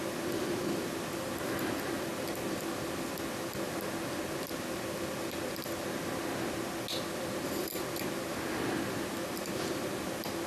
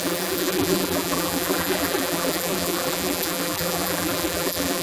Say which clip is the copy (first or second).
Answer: second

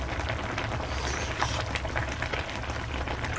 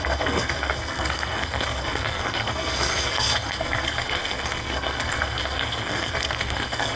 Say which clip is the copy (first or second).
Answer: second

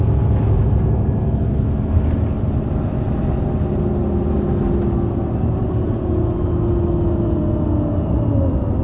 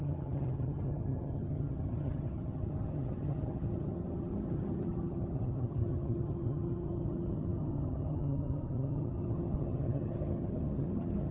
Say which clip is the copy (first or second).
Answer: second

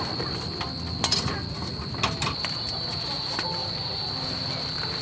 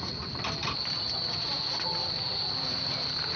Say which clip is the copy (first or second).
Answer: second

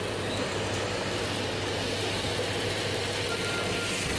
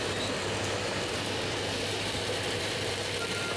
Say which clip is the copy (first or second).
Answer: second